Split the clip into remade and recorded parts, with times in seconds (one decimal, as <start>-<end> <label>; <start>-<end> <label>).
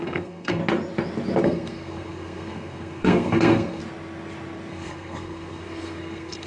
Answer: 0.0-0.6 remade; 0.6-1.4 recorded; 1.4-3.8 remade; 3.8-4.7 recorded; 4.7-6.5 remade